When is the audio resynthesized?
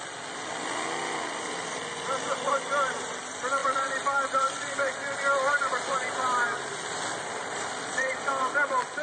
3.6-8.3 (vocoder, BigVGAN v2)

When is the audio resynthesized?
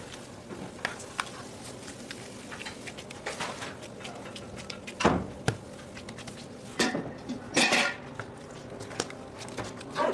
none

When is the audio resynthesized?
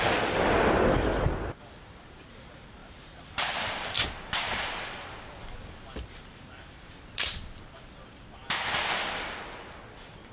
none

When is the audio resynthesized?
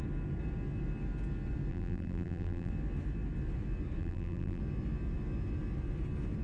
1.7-2.7 (vocoder, BigVGAN v2); 4.0-4.6